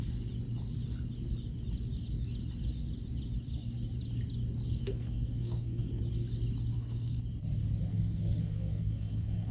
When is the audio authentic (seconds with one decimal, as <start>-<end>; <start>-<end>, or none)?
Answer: 0.0-4.8; 6.0-6.7; 7.2-7.9

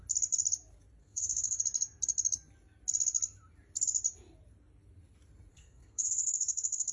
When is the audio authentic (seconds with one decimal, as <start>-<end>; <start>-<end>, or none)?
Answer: 0.0-1.0; 1.6-5.5

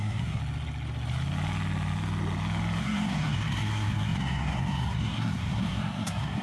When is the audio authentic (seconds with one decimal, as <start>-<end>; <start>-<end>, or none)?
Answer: 0.4-2.8

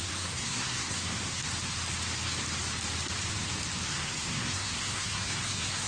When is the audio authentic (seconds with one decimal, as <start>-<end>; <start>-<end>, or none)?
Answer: 1.4-3.9